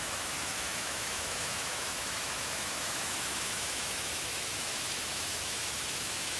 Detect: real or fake fake